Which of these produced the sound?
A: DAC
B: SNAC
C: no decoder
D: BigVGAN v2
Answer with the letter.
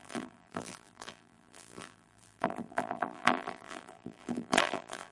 D